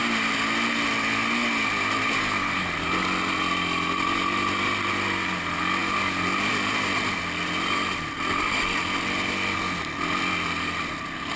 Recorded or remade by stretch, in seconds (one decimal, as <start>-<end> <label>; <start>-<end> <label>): 0.0-11.4 recorded